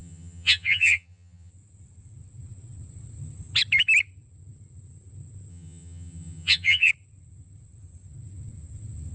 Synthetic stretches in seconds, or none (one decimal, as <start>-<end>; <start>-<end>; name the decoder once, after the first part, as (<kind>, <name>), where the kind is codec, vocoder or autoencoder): 0.0-1.5 (vocoder, HiFi-GAN); 5.5-6.9